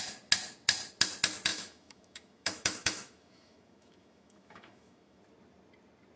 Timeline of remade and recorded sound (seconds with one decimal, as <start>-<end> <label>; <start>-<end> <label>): 0.0-1.5 recorded; 1.5-5.2 remade; 5.2-6.2 recorded